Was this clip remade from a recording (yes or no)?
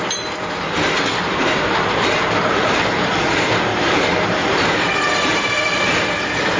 yes